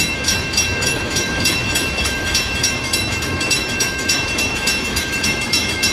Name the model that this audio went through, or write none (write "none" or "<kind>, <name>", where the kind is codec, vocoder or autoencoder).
autoencoder, DAC-VAE